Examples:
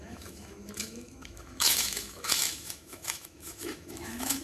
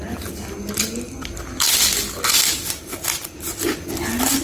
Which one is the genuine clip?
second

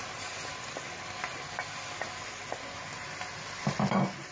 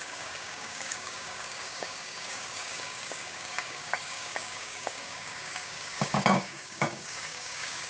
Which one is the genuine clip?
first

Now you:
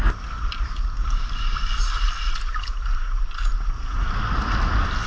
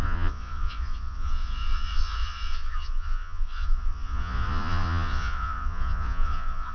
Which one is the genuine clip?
first